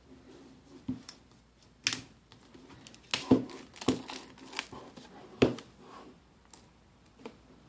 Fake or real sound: real